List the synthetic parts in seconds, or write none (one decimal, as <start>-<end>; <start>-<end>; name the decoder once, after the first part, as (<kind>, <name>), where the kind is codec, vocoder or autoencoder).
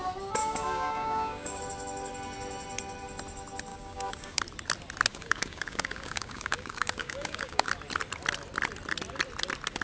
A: 0.4-1.6 (codec, DAC); 3.7-4.4; 5.1-7.7